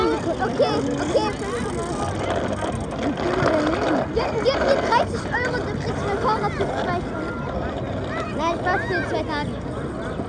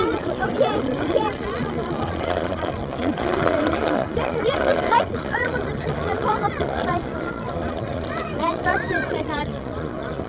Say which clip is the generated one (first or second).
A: second